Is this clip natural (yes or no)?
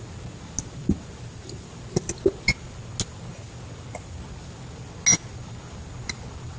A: yes